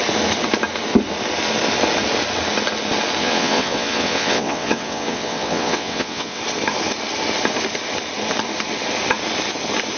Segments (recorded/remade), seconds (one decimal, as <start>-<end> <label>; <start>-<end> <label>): 0.0-3.2 recorded; 3.2-6.4 remade; 6.4-10.0 recorded